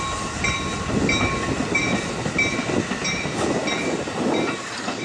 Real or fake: real